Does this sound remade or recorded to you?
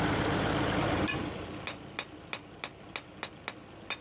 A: recorded